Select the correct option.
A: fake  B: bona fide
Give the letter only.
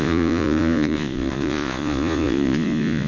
A